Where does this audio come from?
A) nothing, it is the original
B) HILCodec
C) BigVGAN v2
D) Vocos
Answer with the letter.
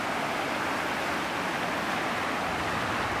A